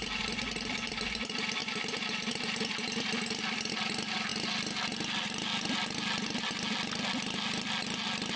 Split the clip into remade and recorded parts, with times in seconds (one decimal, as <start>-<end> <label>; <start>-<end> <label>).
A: 0.0-1.6 recorded; 1.6-3.7 remade; 3.7-8.4 recorded

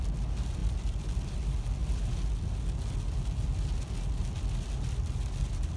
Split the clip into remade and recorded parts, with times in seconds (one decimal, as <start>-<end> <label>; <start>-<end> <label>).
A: 0.0-5.8 recorded

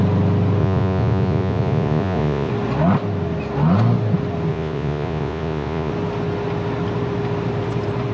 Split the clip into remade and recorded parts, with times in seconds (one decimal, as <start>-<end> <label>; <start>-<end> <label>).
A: 0.0-0.6 recorded; 0.6-2.5 remade; 2.5-4.5 recorded; 4.5-5.9 remade; 5.9-8.1 recorded